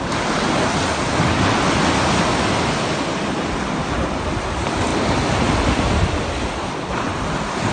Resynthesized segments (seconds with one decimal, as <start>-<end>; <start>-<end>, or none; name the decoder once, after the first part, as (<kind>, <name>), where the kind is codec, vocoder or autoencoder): none